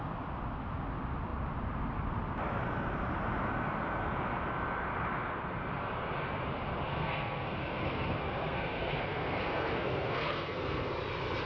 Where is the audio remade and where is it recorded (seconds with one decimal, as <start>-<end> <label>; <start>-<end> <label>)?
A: 0.0-6.9 recorded; 6.9-10.9 remade; 10.9-11.4 recorded